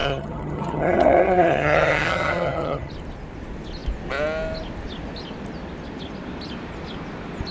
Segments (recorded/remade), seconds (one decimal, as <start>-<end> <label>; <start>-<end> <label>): 0.0-2.9 remade; 2.9-7.5 recorded